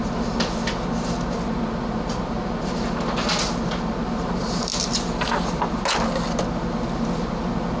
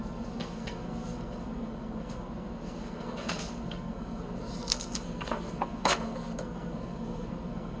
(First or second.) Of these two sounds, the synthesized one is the second